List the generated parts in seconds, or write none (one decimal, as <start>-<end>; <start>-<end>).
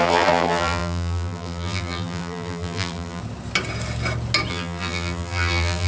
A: 0.0-3.2; 4.5-5.9